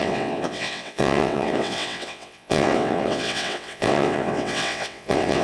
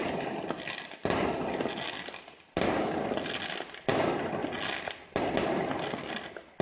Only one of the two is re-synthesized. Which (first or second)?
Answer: first